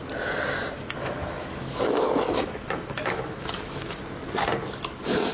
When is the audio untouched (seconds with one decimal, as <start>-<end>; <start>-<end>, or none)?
0.0-1.0; 4.0-5.3